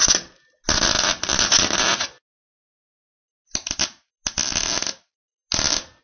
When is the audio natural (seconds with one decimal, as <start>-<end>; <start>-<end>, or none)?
0.0-6.0